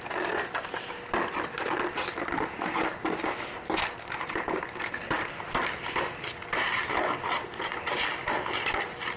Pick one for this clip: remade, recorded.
recorded